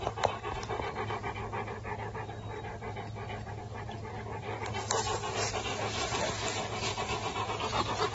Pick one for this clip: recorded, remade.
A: recorded